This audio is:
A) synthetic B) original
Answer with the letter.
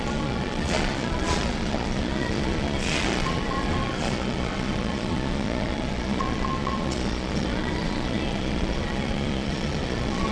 A